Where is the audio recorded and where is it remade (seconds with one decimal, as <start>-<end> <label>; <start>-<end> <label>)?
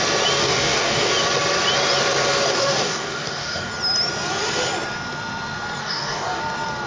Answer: 0.0-0.4 recorded; 0.4-1.1 remade; 1.1-2.5 recorded; 2.5-3.7 remade; 3.7-5.8 recorded; 5.8-6.4 remade; 6.4-6.9 recorded